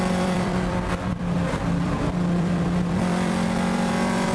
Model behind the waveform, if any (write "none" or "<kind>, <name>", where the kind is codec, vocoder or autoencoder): vocoder, BigVGAN v2